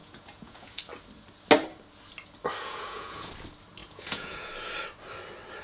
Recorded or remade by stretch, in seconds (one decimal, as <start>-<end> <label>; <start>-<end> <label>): 0.0-0.8 remade; 0.8-2.6 recorded; 2.6-3.3 remade; 3.3-3.8 recorded; 3.8-4.5 remade; 4.5-5.6 recorded